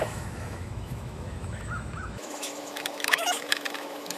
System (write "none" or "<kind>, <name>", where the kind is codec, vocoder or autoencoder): autoencoder, DAC-VAE